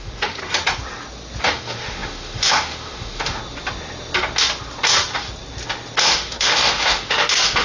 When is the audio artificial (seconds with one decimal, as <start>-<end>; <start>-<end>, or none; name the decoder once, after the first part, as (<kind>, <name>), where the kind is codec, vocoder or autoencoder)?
0.0-0.4 (autoencoder, DAC-VAE); 1.4-3.4; 6.0-7.6

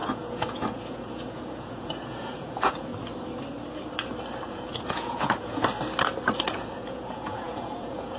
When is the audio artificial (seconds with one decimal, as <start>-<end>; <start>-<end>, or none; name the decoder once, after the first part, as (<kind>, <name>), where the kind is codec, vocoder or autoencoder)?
0.0-2.9 (vocoder, Vocos); 4.5-5.6; 6.5-8.2

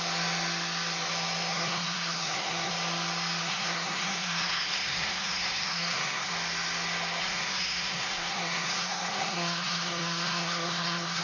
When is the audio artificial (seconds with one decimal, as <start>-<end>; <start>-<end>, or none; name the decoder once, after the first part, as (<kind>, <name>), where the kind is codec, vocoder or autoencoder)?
1.5-2.7 (codec, SNAC); 3.4-6.3; 7.2-11.2

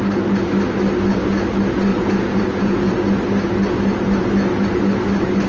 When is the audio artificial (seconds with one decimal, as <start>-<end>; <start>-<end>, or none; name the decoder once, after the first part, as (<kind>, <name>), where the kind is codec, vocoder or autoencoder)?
1.9-2.9 (vocoder, Vocos)

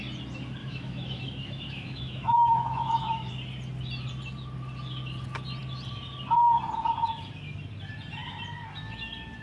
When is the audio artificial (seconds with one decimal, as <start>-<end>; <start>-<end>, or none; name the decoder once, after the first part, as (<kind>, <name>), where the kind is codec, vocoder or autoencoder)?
0.6-3.3 (autoencoder, DAC-VAE)

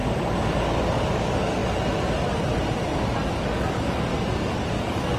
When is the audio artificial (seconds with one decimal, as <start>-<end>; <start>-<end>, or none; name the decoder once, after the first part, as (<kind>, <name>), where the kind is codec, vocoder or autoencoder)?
0.6-1.6 (codec, DAC); 3.4-4.1; 4.8-5.2

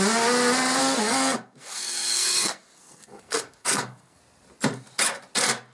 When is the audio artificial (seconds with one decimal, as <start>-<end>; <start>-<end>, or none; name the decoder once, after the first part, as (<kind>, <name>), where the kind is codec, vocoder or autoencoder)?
0.8-4.2 (codec, SNAC)

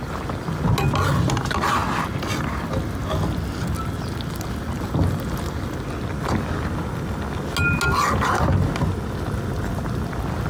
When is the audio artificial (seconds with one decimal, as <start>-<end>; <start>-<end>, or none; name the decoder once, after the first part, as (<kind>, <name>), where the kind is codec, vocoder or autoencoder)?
none